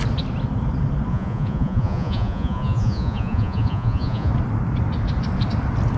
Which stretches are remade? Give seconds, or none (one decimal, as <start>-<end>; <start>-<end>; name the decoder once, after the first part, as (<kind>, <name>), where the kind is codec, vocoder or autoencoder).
1.1-4.3 (vocoder, Vocos)